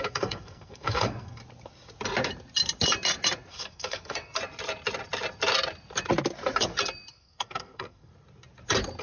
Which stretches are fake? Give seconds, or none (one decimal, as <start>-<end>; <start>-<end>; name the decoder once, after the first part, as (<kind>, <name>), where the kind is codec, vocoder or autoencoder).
0.0-1.4 (codec, SNAC); 3.5-4.4; 7.1-8.1